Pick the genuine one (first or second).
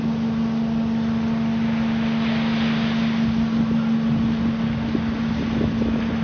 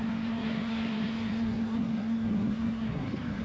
first